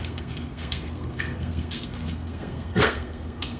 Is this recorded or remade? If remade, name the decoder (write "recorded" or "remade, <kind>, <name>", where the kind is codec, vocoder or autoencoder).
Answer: remade, codec, SNAC